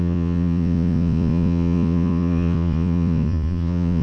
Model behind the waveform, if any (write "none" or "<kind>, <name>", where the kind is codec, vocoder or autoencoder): vocoder, Vocos